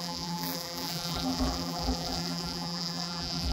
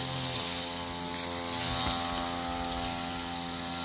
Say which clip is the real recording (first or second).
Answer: second